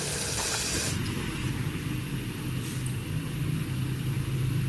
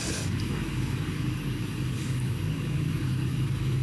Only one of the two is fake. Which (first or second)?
second